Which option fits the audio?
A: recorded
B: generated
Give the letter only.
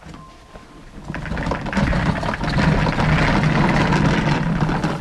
A